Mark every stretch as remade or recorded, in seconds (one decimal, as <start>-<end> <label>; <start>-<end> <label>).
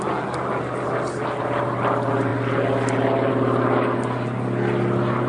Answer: 0.0-5.3 recorded